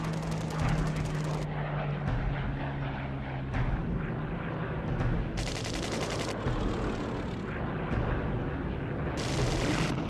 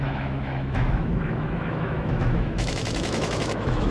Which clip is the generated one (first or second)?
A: second